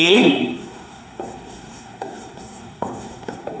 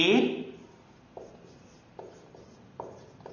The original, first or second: second